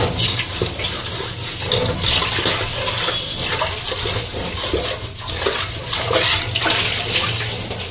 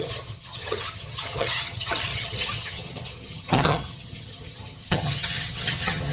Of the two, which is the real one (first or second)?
first